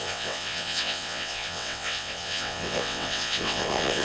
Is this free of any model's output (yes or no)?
no